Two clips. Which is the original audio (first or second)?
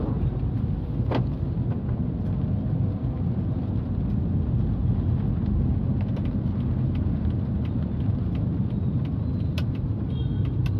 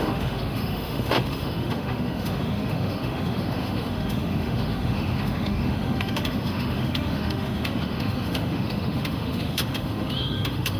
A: first